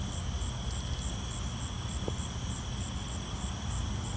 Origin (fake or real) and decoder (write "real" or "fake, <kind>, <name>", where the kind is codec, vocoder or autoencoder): real